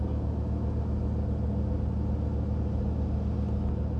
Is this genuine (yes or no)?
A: yes